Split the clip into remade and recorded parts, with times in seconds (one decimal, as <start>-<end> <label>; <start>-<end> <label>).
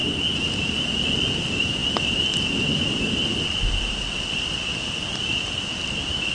0.0-0.5 recorded; 0.5-6.3 remade